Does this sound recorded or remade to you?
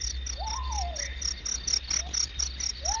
recorded